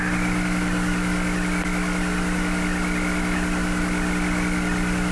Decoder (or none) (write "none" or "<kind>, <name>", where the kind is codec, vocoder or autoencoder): none